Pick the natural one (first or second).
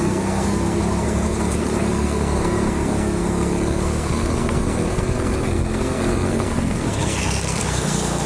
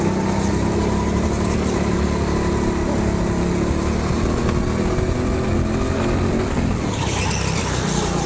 second